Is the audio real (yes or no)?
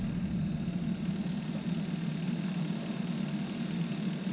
yes